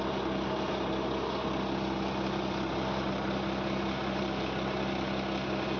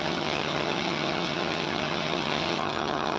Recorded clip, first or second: first